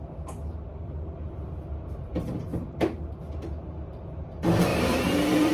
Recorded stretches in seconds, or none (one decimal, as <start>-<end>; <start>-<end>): 0.0-0.7; 2.8-4.7